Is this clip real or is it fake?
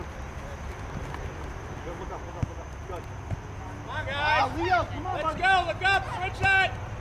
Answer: real